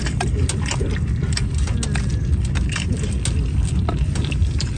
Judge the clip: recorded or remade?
recorded